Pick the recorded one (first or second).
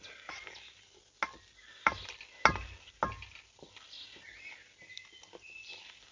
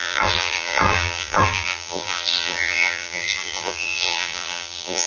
first